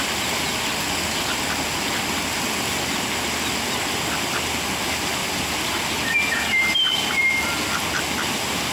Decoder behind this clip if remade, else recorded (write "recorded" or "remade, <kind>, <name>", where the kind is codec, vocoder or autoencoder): recorded